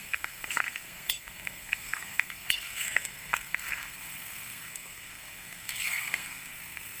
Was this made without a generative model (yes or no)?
no